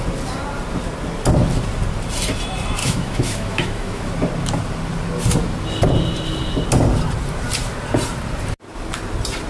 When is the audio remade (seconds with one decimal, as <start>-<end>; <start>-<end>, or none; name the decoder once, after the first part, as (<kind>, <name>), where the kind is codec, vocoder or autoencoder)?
2.8-4.1 (autoencoder, DAC-VAE)